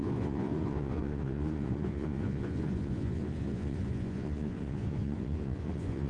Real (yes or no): no